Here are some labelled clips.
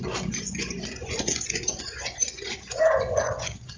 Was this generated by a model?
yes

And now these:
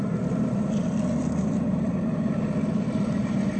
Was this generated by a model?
yes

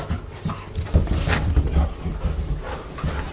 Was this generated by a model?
no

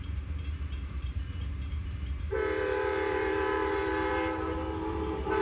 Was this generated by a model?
yes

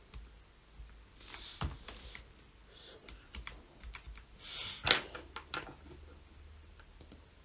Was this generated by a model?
no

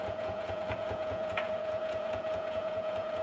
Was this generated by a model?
yes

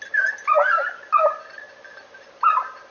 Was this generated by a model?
no